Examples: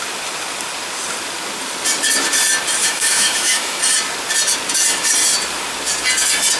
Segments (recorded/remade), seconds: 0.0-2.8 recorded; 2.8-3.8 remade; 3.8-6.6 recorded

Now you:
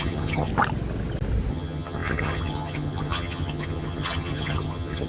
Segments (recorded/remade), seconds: 0.0-0.5 remade; 0.5-1.5 recorded; 1.5-5.1 remade

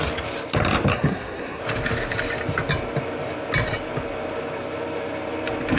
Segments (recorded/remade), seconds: 0.0-0.9 recorded; 0.9-1.6 remade; 1.6-5.8 recorded

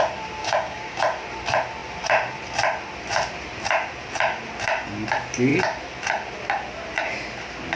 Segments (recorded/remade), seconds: 0.0-0.4 recorded; 0.4-1.0 remade; 1.0-7.8 recorded

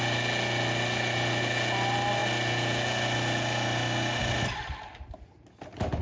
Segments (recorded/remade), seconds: 0.0-6.0 recorded

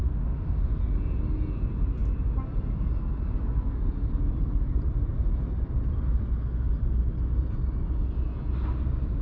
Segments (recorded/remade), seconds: 0.0-0.7 remade; 0.7-9.2 recorded